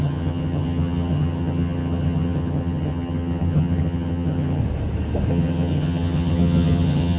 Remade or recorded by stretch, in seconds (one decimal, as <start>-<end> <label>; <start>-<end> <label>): 0.0-4.6 remade; 4.6-5.3 recorded; 5.3-7.2 remade